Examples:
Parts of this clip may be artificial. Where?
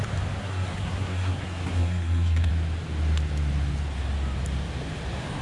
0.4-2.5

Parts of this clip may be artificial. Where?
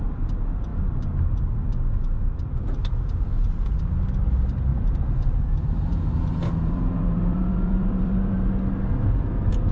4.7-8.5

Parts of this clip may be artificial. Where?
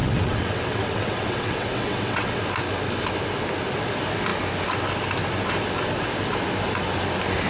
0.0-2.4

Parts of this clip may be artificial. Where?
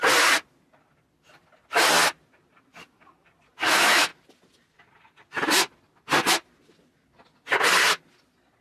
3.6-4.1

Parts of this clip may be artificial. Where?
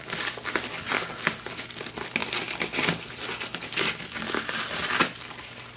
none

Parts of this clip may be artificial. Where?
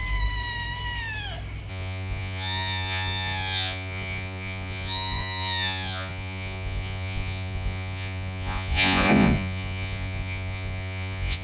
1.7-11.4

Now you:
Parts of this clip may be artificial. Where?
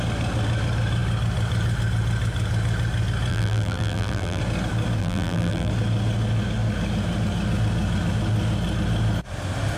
3.3-4.4; 5.0-5.7